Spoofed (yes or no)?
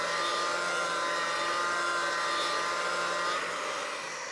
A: no